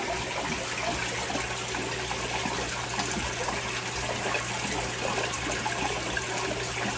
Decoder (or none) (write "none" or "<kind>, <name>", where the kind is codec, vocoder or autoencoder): none